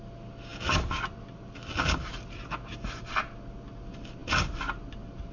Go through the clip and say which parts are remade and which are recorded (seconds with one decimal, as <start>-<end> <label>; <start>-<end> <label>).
0.0-5.3 recorded